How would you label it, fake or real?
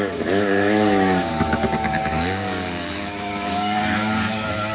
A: fake